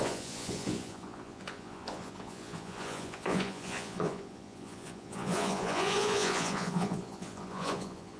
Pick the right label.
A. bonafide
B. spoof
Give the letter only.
B